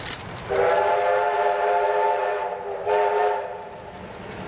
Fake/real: real